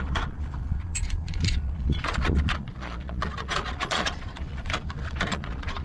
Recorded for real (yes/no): no